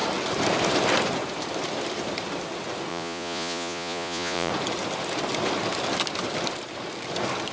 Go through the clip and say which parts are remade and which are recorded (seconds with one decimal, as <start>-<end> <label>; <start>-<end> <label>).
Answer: 0.0-2.9 recorded; 2.9-4.5 remade; 4.5-7.5 recorded